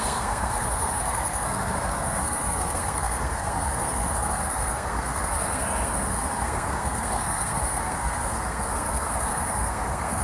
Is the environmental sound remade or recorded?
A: remade